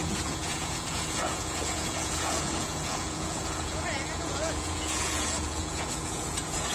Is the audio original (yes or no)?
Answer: no